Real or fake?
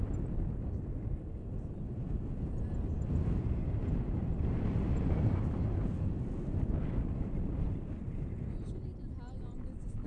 real